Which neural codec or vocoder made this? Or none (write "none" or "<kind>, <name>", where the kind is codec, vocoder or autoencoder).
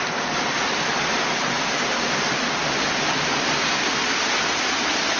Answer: none